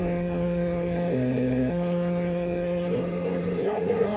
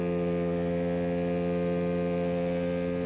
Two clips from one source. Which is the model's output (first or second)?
first